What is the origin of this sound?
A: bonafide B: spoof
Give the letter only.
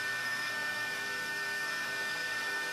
B